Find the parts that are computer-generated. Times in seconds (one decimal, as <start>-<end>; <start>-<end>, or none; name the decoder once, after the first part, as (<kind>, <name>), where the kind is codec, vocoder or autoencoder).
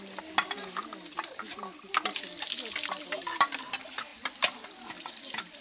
none